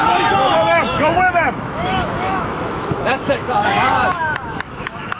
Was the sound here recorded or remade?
remade